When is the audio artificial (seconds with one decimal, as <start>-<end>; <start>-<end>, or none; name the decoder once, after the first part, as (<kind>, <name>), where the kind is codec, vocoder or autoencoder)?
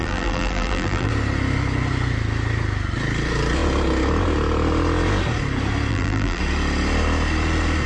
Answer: 0.0-1.1 (vocoder, BigVGAN v2); 5.9-6.4